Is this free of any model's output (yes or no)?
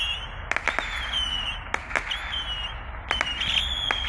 yes